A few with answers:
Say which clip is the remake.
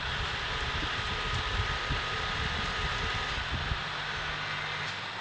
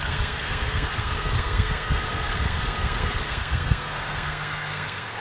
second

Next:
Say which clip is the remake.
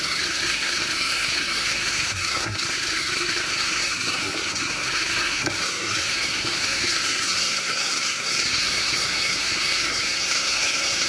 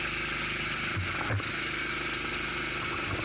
first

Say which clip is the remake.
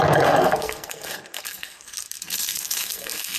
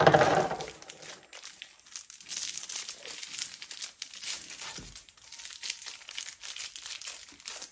first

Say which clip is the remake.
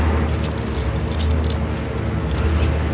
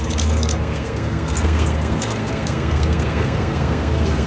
second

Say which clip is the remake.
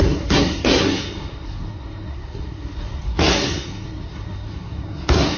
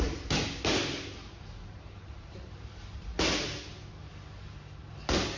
first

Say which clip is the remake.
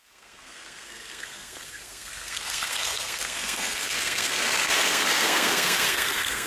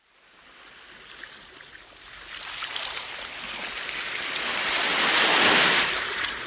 first